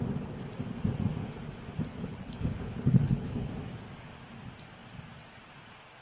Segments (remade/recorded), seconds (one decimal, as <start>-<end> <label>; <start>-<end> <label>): 0.0-1.9 recorded; 1.9-3.5 remade; 3.5-6.0 recorded